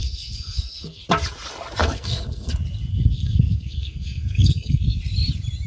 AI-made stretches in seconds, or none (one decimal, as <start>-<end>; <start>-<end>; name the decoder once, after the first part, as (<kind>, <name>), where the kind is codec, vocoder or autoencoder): 0.0-1.0 (codec, SNAC); 1.8-2.5; 2.9-5.0